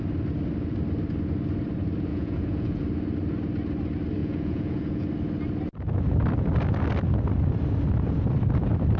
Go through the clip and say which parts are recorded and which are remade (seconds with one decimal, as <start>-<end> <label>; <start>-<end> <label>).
0.0-2.1 recorded; 2.1-2.8 remade; 2.8-4.2 recorded; 4.2-5.0 remade; 5.0-9.0 recorded